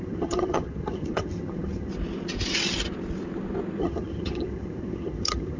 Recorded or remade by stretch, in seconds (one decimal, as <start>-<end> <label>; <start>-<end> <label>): 0.0-1.9 remade; 1.9-3.8 recorded; 3.8-5.6 remade